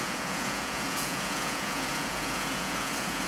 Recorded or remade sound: remade